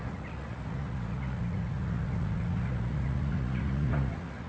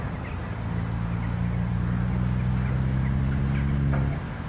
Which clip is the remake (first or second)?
first